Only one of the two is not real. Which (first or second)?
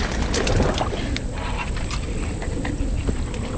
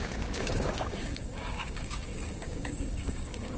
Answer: second